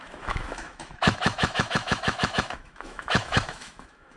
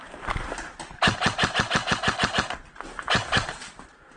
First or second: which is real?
second